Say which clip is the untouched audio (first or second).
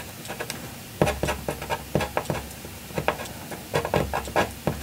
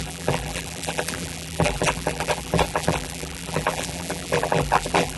first